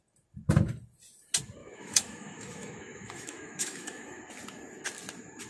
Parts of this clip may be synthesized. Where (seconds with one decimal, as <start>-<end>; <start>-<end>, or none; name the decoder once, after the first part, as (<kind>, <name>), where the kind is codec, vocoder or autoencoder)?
1.6-4.2 (autoencoder, DAC-VAE)